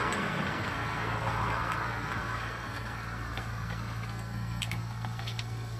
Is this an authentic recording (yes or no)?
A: no